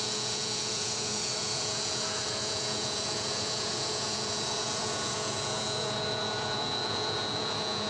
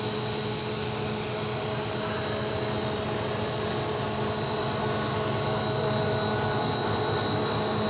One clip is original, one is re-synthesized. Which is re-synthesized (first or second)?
first